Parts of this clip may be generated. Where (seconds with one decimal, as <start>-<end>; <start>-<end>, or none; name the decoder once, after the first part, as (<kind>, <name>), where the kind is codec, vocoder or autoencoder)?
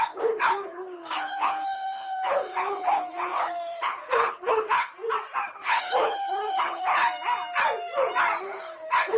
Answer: 0.0-4.9 (codec, HILCodec); 5.5-7.0; 8.4-9.2